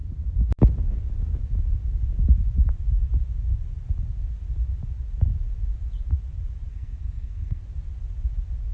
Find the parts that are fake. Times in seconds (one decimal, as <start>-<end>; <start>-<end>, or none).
6.7-7.6